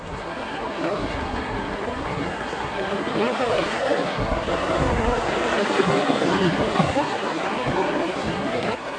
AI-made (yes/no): yes